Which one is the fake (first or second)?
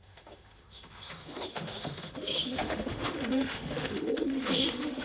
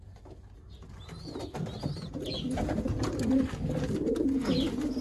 first